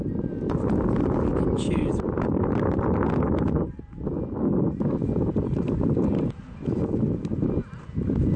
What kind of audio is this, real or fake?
real